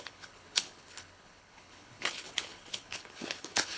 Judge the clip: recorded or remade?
remade